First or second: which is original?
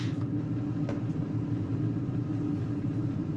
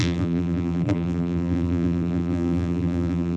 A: first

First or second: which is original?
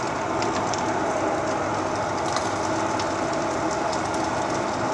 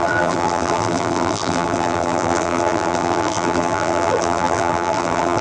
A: first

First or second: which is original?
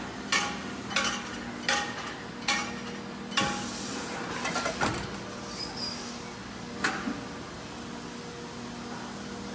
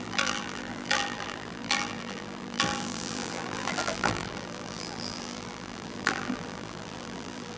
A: first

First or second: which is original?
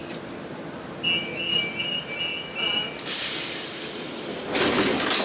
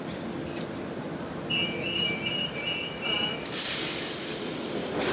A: first